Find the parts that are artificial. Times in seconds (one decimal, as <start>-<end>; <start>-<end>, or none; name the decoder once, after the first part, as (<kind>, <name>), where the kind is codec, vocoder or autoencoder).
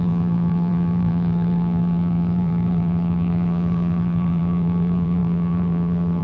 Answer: 0.0-6.2 (vocoder, BigVGAN v2)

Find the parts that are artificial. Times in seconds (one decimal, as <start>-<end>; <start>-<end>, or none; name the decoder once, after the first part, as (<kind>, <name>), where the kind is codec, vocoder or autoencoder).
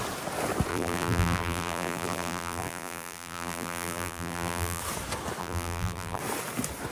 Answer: 0.7-4.8 (vocoder, BigVGAN v2); 5.4-6.2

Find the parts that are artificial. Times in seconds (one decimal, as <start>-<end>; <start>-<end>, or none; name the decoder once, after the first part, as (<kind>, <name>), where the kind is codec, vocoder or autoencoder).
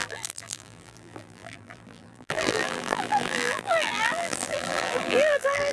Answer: 0.0-5.7 (vocoder, BigVGAN v2)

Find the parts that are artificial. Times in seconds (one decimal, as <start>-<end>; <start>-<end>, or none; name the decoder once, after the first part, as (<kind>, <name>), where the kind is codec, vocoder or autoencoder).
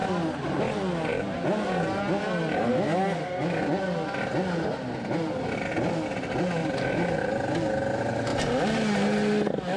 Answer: 6.6-7.3 (vocoder, BigVGAN v2)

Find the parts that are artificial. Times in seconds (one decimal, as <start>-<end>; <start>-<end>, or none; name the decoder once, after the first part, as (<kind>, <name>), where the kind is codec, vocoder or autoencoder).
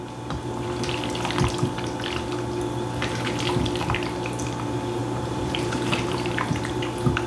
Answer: 5.0-6.7 (vocoder, BigVGAN v2)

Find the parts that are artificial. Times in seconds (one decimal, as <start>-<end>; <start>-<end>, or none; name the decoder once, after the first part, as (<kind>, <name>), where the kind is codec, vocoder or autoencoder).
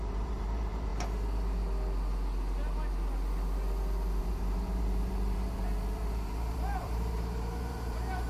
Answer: 0.0-0.9 (vocoder, BigVGAN v2); 4.2-8.3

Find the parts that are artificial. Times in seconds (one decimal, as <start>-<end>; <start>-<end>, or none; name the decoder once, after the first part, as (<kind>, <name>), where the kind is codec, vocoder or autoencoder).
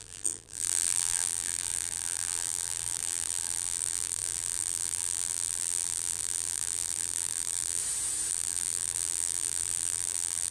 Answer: 0.0-7.8 (vocoder, BigVGAN v2); 8.3-10.5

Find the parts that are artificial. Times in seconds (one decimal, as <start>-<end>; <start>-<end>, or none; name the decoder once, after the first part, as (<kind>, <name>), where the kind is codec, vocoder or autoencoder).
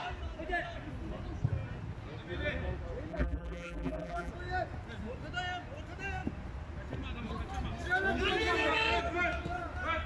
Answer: 3.1-4.3 (vocoder, BigVGAN v2)